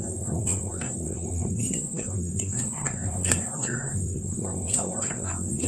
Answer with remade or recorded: remade